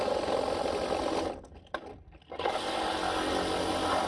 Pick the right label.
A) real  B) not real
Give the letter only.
A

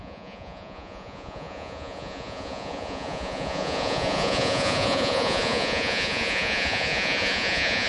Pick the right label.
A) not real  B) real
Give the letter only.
A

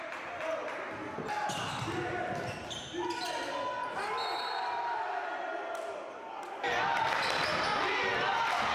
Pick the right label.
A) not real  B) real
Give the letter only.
B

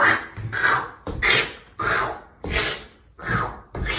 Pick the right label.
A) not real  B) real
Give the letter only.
B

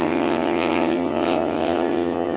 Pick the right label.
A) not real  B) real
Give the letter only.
A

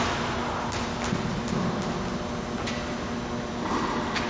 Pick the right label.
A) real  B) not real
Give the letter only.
A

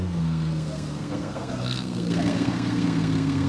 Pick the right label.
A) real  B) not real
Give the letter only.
B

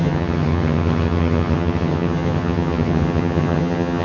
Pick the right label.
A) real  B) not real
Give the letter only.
B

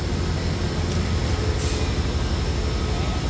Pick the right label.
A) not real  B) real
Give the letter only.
B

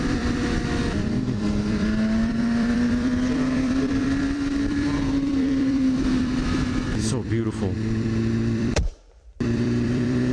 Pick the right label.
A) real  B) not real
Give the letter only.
B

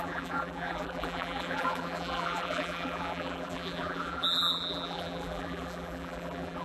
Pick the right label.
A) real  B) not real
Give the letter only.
B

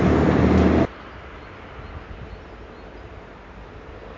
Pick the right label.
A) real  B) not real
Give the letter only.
A